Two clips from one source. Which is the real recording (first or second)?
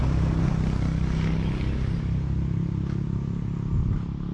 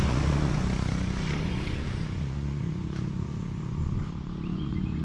first